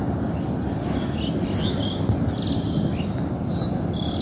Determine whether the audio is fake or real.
real